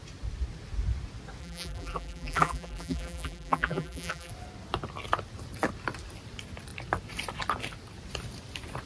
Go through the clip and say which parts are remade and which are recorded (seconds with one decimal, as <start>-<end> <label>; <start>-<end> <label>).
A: 0.0-1.4 recorded; 1.4-4.3 remade; 4.3-8.9 recorded